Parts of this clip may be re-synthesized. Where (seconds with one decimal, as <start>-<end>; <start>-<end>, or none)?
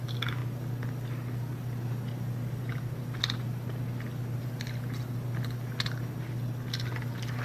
none